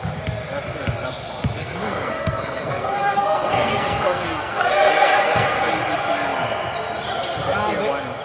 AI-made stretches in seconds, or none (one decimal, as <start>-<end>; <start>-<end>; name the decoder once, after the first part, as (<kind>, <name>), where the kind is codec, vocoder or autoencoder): 1.6-5.7 (codec, SNAC)